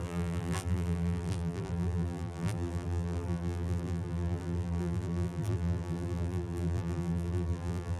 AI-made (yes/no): yes